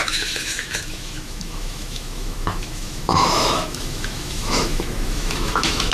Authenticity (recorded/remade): remade